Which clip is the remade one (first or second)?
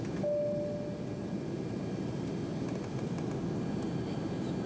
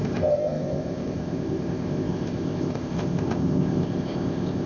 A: second